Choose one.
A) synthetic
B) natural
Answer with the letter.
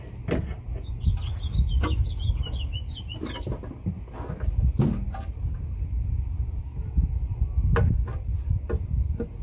B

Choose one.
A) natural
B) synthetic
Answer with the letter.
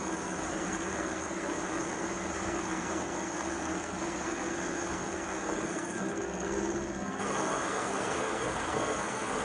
B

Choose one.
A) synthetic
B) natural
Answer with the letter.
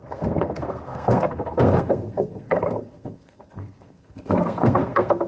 A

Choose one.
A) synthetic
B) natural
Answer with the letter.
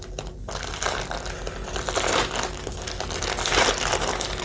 B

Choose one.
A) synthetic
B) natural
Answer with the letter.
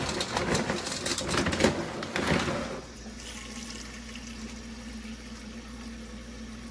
B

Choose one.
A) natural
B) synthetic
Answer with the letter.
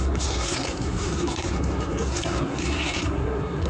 B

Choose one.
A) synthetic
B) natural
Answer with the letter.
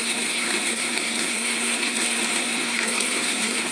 A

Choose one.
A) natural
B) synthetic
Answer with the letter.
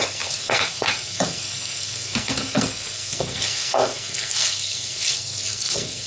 B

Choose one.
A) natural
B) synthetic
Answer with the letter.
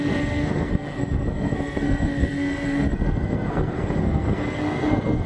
B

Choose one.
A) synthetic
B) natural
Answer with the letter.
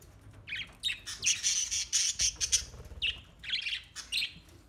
B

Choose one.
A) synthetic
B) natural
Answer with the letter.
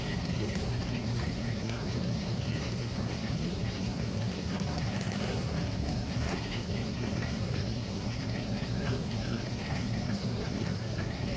A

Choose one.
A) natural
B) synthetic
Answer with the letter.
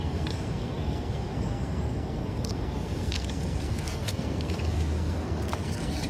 B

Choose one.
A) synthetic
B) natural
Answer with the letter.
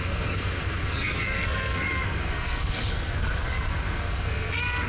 A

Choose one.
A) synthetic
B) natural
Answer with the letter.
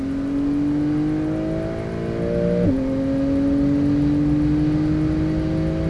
B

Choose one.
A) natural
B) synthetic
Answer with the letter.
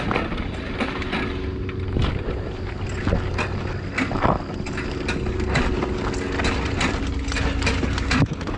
A